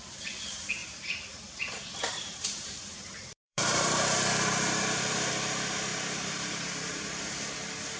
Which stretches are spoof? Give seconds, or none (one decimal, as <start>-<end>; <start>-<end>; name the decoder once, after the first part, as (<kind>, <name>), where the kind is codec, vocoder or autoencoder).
0.8-5.3 (vocoder, BigVGAN v2); 5.9-7.1